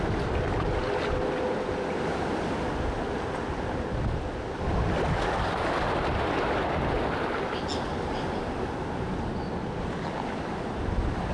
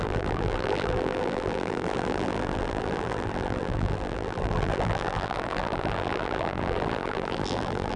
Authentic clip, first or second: first